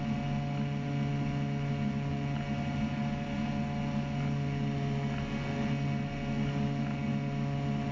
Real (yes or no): yes